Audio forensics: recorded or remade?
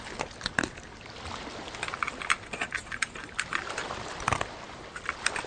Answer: recorded